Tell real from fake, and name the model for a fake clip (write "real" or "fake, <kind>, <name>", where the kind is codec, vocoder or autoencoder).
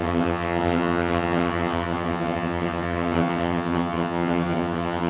fake, vocoder, HiFi-GAN